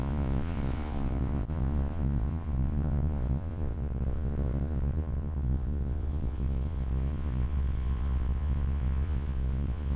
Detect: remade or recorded remade